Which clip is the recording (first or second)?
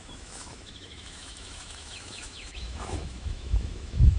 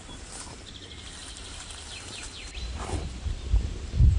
second